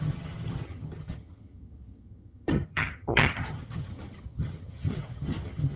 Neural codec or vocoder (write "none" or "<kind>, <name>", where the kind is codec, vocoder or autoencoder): vocoder, HiFi-GAN